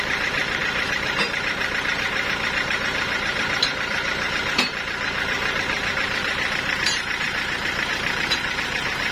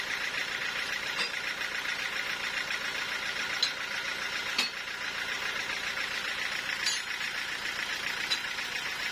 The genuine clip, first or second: second